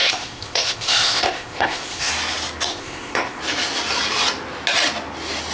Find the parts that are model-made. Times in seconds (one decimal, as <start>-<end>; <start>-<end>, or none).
0.0-2.1; 2.7-3.4